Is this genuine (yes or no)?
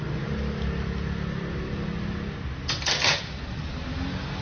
yes